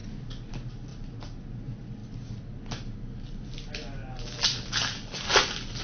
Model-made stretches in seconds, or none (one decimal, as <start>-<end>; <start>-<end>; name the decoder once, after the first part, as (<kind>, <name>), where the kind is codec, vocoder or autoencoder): none